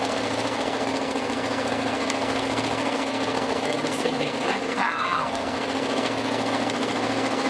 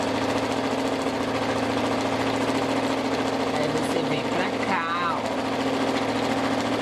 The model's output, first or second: first